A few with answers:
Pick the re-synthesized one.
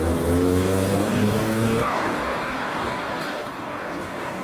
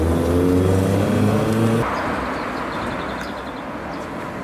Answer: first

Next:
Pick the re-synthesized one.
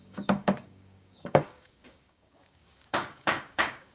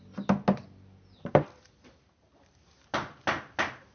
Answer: first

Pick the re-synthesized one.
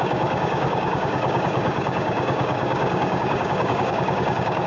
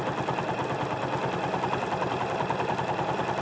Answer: first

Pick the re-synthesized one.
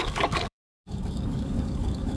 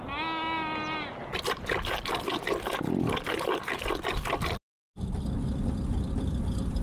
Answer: first